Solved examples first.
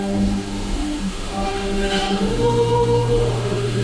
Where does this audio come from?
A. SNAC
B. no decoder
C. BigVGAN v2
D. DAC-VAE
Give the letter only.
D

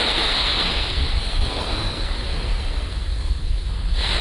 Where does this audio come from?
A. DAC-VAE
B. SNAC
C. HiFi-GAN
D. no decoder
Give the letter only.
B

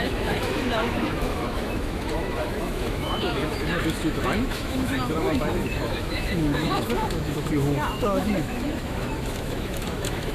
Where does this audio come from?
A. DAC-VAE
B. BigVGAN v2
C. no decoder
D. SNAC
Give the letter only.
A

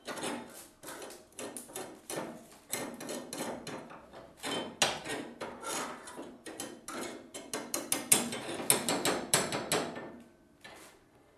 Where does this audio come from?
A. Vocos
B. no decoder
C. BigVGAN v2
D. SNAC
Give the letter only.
B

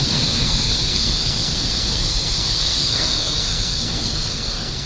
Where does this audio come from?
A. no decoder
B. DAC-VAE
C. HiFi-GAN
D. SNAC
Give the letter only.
D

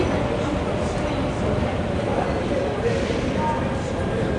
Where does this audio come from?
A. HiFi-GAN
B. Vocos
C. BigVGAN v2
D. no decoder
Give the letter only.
D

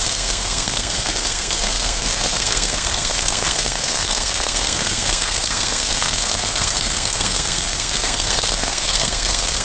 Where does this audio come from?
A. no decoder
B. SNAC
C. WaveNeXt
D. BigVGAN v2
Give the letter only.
B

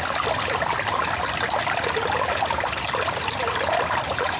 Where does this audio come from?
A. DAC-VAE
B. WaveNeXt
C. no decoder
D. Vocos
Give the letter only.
C